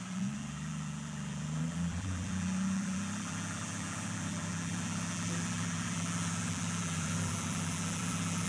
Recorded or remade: remade